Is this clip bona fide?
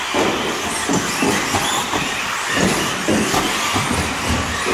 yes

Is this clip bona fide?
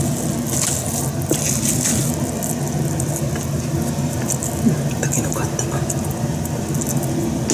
yes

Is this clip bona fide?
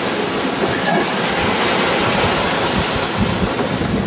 yes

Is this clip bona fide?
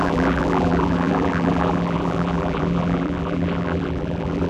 no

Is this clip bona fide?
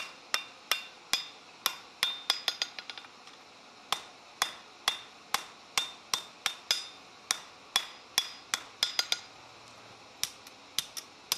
yes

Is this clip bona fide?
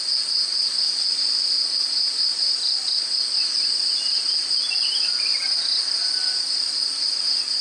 yes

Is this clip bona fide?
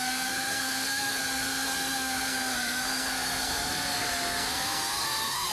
no